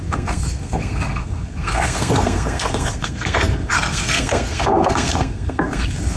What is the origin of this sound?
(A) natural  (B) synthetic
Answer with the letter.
B